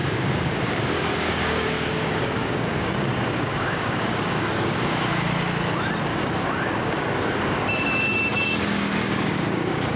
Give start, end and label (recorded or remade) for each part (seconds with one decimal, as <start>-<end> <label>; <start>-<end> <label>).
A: 0.0-5.2 remade; 5.2-6.1 recorded; 6.1-10.0 remade